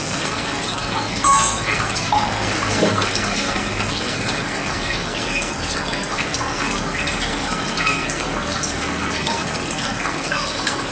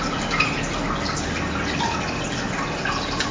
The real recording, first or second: second